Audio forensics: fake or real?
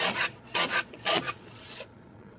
fake